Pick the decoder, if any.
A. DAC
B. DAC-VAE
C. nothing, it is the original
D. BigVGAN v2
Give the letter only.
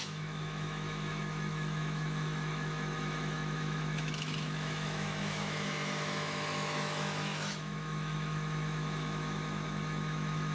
B